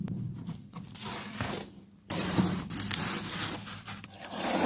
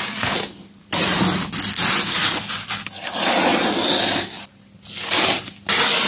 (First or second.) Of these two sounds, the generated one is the first